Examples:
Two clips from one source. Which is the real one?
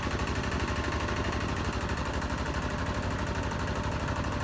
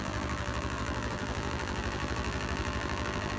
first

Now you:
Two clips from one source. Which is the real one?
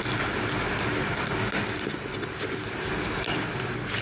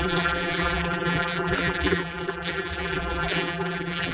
first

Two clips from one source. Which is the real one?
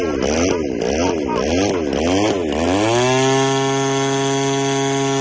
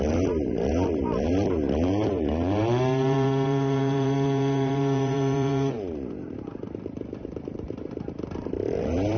first